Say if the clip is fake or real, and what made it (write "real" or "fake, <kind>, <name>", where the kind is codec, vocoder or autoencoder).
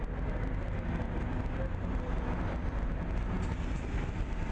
real